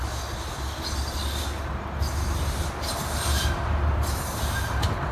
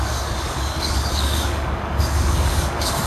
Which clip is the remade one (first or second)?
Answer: second